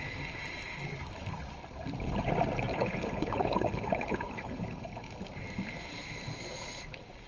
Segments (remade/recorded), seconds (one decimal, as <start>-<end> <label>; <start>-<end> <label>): 0.0-2.7 recorded; 2.7-5.2 remade; 5.2-7.3 recorded